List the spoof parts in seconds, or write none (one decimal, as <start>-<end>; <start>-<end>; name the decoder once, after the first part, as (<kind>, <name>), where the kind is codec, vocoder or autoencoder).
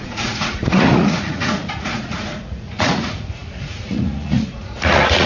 0.0-5.3 (vocoder, Vocos)